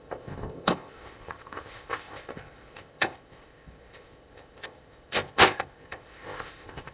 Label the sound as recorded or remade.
remade